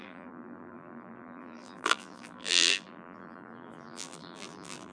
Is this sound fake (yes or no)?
yes